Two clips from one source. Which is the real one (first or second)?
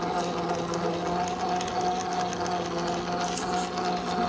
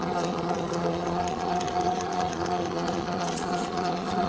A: first